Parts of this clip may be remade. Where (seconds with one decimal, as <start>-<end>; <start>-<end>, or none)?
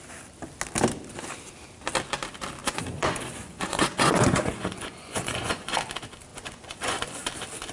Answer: 2.6-5.8; 6.3-7.3